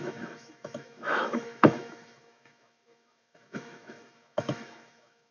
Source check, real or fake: fake